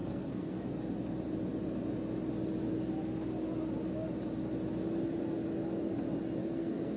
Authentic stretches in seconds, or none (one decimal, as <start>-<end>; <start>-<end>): 0.6-6.4